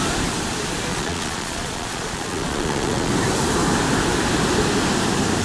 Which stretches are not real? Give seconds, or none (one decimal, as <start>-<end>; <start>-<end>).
0.9-3.1